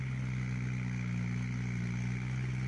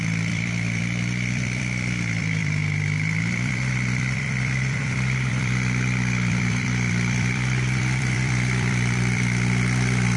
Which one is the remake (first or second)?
second